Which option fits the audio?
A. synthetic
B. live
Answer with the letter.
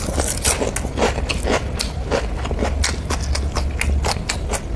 B